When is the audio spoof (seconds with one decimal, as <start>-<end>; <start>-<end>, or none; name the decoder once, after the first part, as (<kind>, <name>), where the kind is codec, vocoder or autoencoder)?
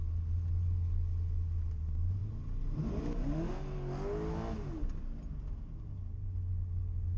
none